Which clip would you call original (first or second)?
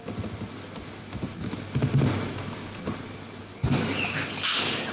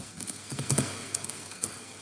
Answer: first